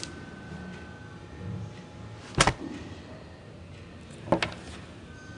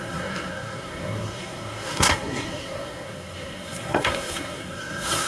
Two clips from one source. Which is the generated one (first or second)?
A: second